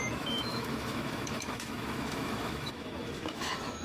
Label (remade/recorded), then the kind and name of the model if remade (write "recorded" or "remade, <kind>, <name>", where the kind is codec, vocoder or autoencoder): remade, autoencoder, DAC-VAE